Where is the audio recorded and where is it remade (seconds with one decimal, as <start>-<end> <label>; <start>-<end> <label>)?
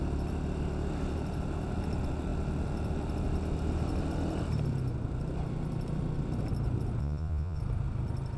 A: 0.0-7.0 recorded; 7.0-7.6 remade; 7.6-8.4 recorded